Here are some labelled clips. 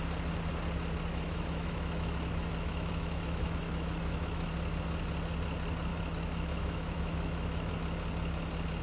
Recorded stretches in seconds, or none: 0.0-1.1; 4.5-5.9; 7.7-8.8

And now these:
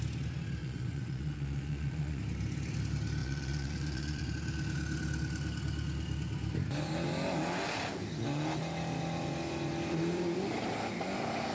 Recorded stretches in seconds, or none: 0.0-0.6; 2.2-3.2; 4.3-11.5